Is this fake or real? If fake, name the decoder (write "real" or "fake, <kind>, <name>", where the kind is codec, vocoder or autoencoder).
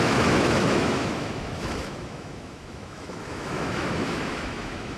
fake, autoencoder, DAC-VAE